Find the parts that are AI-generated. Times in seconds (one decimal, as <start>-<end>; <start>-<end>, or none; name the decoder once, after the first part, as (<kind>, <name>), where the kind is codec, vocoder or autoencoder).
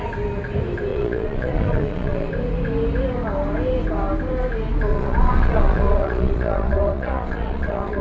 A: 0.9-2.3 (vocoder, Vocos); 4.9-8.0